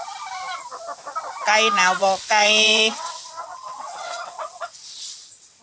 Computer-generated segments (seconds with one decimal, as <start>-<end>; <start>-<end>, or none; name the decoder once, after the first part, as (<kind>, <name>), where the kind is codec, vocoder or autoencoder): 2.0-5.6 (vocoder, WaveNeXt)